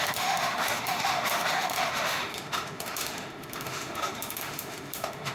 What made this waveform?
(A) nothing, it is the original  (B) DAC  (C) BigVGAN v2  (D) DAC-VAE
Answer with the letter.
D